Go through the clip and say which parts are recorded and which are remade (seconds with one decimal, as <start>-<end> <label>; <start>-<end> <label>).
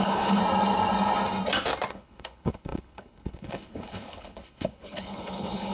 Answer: 0.0-0.4 remade; 0.4-1.9 recorded; 1.9-5.7 remade